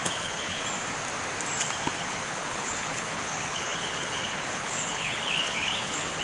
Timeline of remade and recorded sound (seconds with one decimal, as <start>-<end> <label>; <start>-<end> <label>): 0.0-0.6 remade; 0.6-2.0 recorded; 2.0-6.2 remade